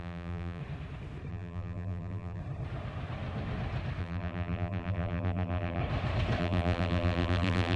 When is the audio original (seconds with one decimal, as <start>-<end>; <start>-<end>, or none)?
0.6-1.3; 2.4-4.0; 5.8-6.4